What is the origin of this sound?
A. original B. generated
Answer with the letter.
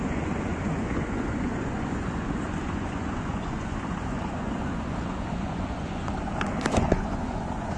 B